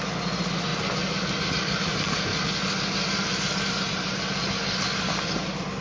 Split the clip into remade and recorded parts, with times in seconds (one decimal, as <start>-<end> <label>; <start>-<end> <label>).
0.0-5.8 recorded